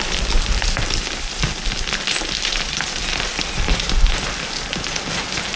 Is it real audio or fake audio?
real